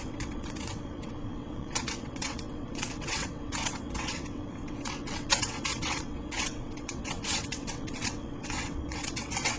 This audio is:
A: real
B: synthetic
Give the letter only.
B